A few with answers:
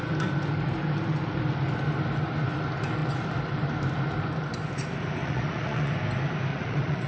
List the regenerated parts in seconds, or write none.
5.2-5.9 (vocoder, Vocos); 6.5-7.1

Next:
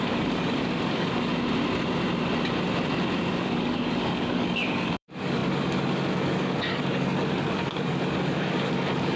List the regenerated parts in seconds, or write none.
0.0-1.3 (codec, DAC); 3.3-9.2

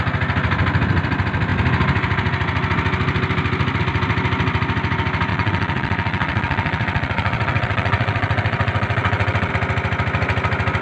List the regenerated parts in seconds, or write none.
5.3-9.5 (vocoder, WaveNeXt)

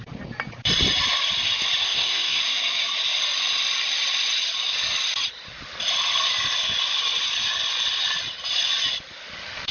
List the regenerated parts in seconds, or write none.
1.8-2.4 (codec, SNAC)

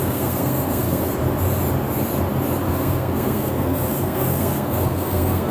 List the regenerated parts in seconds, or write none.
0.0-1.0 (codec, SNAC); 2.6-5.5